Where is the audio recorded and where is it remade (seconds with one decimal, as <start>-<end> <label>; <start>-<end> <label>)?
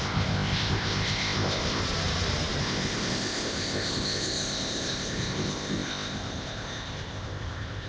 0.0-1.8 remade; 1.8-2.6 recorded; 2.6-7.9 remade